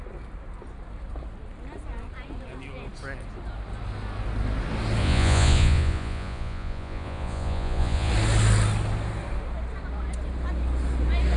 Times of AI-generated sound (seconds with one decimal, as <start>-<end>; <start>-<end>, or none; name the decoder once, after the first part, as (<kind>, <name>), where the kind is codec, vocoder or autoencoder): 5.0-8.1 (vocoder, Vocos)